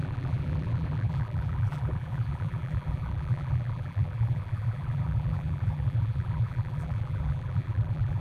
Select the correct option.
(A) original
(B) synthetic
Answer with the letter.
B